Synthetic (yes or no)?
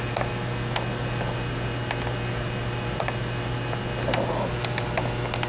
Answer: no